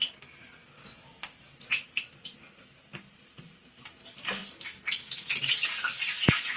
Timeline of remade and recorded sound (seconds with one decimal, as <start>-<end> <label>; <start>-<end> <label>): 0.0-6.6 recorded